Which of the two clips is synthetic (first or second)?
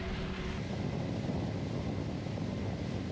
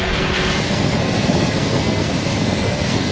second